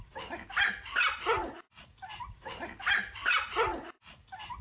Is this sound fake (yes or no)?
no